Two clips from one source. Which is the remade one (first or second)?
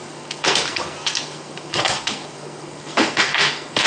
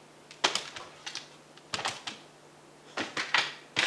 first